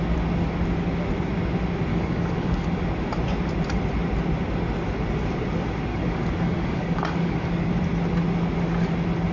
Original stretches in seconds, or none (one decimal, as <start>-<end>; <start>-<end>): 0.0-1.9; 2.8-5.9; 7.7-9.3